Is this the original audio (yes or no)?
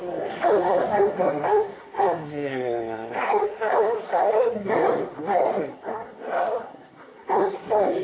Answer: no